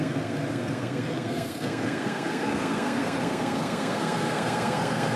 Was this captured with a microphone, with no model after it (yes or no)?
no